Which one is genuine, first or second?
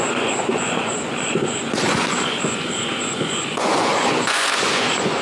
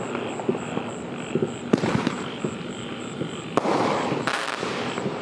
second